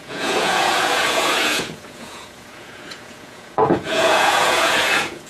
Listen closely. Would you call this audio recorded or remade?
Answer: remade